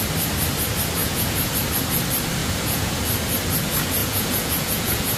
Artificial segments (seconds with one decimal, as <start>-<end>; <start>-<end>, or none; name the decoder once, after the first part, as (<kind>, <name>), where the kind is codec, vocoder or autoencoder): 1.0-1.5 (vocoder, Vocos); 2.4-3.0; 4.0-5.2